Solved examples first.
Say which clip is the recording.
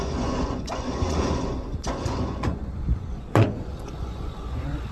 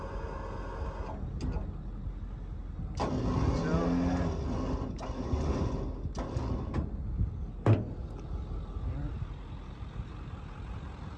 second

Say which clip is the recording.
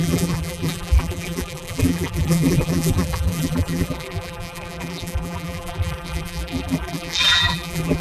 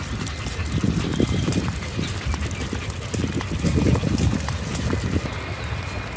second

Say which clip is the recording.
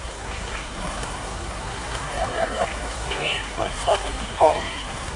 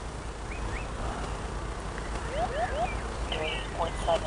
second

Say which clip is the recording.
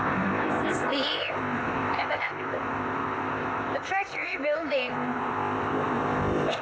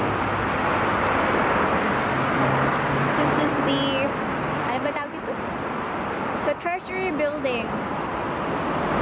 second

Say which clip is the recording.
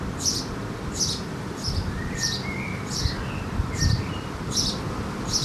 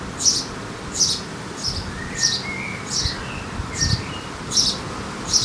second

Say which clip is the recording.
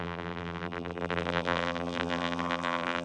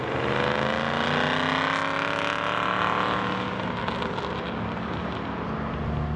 second